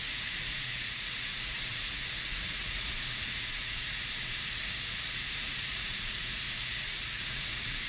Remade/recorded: remade